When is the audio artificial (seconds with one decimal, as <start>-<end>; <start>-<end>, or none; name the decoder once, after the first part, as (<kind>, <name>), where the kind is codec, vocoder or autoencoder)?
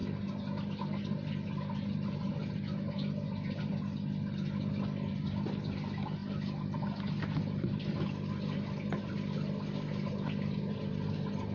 none